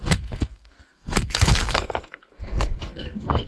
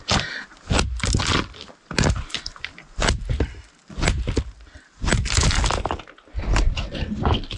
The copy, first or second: first